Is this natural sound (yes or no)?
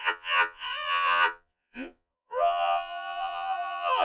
no